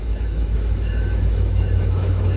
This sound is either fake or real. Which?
fake